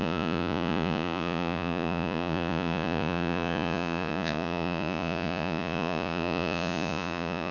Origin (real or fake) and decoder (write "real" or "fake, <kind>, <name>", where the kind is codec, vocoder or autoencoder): fake, vocoder, Vocos